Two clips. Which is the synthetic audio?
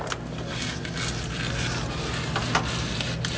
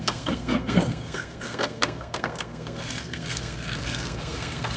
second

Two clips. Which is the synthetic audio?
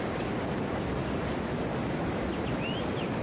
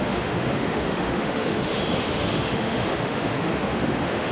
second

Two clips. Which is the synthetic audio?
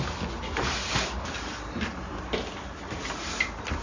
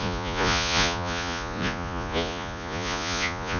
second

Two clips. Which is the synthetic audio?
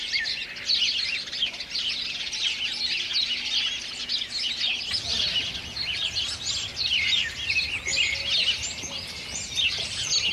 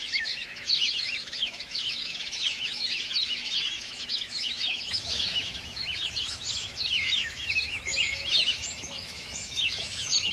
second